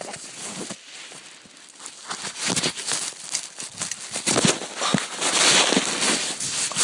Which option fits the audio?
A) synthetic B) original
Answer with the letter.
B